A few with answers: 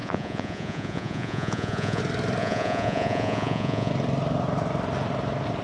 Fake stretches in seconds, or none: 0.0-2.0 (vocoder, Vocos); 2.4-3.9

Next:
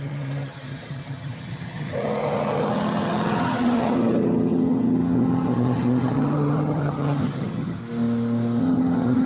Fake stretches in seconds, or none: 0.0-7.8 (vocoder, HiFi-GAN); 8.6-9.3

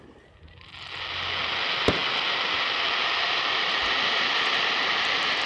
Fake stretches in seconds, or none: none

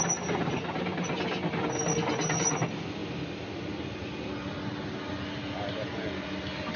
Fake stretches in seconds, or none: none

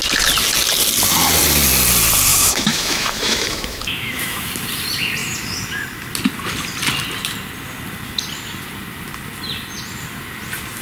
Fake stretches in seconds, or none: 2.3-4.5 (autoencoder, DAC-VAE)